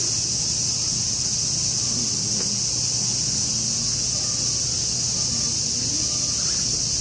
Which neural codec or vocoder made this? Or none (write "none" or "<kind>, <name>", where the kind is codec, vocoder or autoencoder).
none